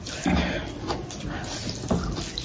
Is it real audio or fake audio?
real